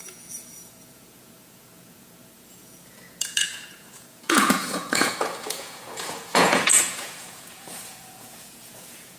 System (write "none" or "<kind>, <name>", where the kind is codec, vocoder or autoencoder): vocoder, Vocos